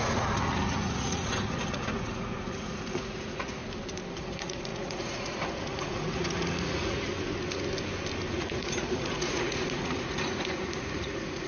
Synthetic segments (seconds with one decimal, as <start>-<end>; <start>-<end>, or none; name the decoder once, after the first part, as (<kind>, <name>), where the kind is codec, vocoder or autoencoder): 0.0-3.6 (vocoder, Vocos); 4.2-7.1; 8.3-11.5